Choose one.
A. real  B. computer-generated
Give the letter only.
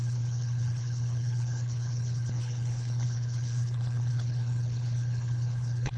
B